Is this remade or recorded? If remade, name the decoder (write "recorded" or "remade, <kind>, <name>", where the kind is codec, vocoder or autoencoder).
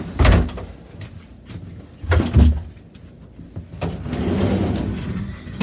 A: recorded